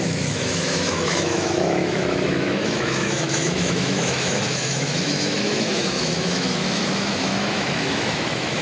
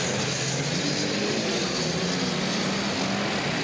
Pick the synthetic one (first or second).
first